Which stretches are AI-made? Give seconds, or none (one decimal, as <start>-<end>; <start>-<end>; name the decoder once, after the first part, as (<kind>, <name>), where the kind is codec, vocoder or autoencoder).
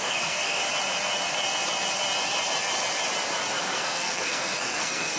0.0-0.6 (codec, SNAC); 3.6-5.2